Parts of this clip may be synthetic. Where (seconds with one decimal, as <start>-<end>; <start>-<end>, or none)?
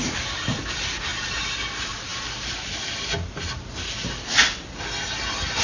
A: none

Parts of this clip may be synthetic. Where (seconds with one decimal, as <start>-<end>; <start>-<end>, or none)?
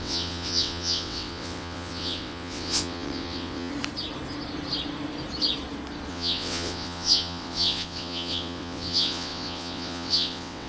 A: 0.0-3.7; 6.1-10.7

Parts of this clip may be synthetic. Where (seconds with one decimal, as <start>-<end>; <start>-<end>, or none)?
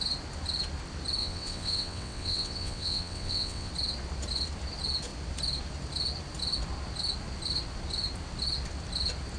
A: 1.2-3.7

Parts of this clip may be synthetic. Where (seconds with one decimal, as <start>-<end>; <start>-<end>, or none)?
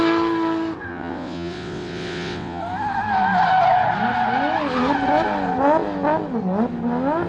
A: 0.9-2.6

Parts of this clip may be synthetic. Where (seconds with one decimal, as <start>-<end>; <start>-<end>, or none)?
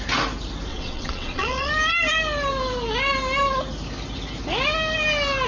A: 0.7-1.7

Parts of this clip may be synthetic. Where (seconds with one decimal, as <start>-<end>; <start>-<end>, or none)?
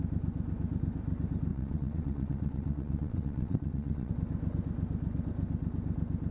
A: 1.5-4.1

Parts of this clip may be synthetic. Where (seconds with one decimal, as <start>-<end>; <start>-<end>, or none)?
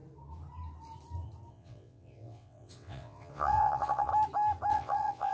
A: 1.5-4.1; 4.7-5.3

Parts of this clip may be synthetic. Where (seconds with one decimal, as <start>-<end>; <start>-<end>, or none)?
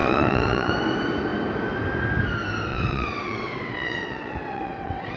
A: 0.0-0.7; 2.7-5.2